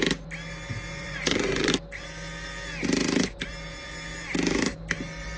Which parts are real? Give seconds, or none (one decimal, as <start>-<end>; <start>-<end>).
0.0-0.9; 1.7-5.4